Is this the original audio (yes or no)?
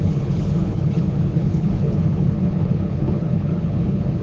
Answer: no